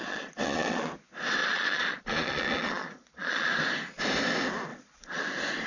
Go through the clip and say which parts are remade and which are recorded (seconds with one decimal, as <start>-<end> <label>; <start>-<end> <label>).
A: 0.0-0.9 remade; 0.9-1.4 recorded; 1.4-3.5 remade; 3.5-4.7 recorded; 4.7-5.2 remade; 5.2-5.7 recorded